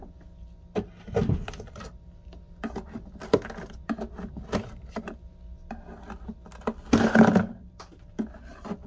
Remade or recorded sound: recorded